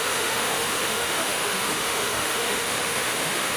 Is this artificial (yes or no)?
yes